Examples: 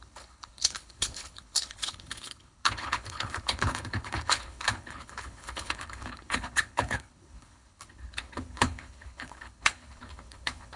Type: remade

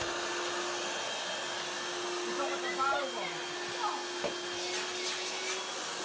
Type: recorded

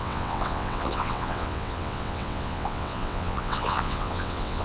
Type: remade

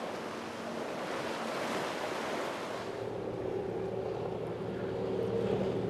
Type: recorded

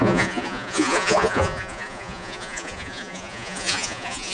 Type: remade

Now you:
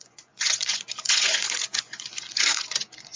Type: remade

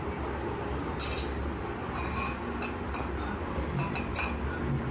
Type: recorded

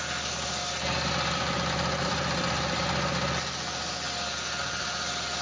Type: recorded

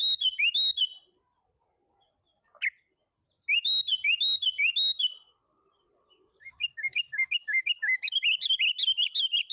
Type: recorded